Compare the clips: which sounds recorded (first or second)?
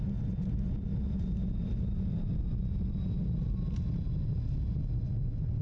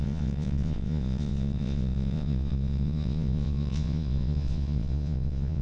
first